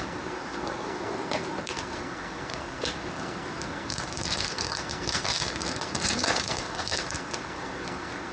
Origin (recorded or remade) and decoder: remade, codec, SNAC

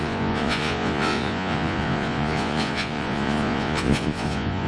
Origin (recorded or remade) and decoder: remade, vocoder, Vocos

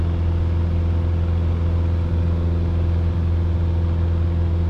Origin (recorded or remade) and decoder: recorded